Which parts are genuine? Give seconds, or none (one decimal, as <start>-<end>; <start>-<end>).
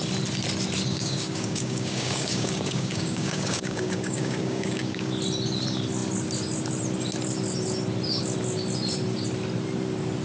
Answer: 0.0-0.9; 5.1-10.2